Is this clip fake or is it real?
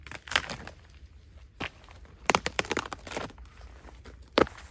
fake